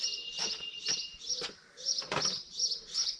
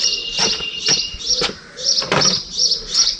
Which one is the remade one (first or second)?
second